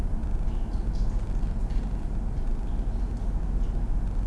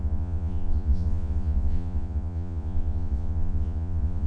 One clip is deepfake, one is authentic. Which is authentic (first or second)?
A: first